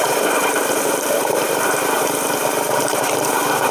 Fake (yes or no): yes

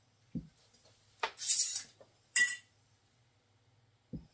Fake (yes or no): no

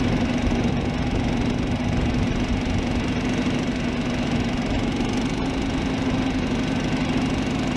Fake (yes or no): no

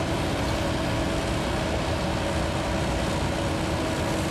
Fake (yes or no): no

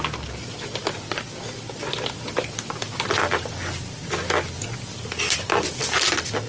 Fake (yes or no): no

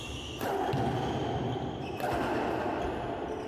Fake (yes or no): no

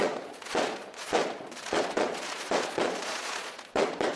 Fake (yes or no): yes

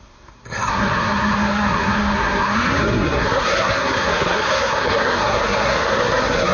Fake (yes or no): yes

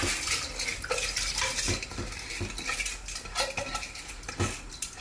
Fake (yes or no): no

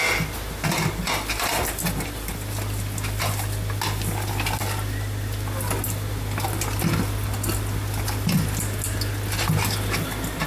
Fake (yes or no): no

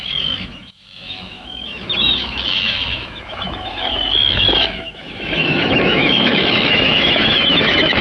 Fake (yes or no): yes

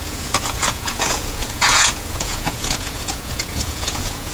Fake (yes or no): yes